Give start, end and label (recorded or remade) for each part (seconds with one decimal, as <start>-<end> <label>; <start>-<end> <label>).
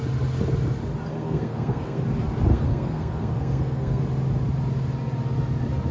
0.0-1.1 recorded; 1.1-2.0 remade; 2.0-2.5 recorded; 2.5-4.0 remade; 4.0-5.9 recorded